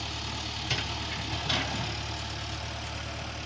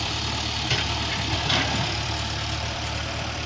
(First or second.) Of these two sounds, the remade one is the second